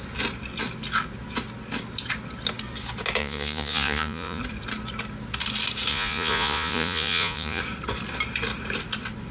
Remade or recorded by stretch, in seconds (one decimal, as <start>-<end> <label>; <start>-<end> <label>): 0.0-3.2 recorded; 3.2-4.4 remade; 4.4-5.9 recorded; 5.9-7.6 remade; 7.6-9.3 recorded